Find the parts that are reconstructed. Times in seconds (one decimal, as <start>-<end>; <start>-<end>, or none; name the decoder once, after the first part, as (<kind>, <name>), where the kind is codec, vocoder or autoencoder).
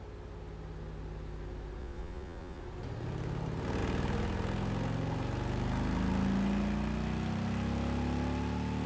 1.8-2.6 (vocoder, Vocos)